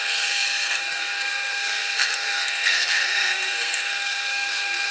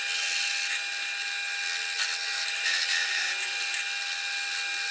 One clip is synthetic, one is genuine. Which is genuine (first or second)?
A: second